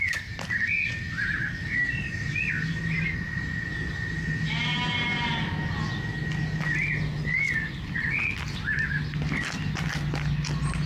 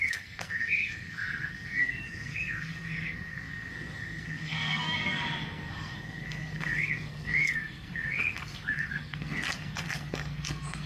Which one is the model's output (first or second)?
second